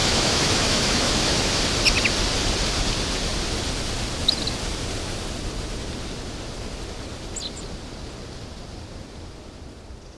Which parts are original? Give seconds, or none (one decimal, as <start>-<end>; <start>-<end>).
1.6-10.2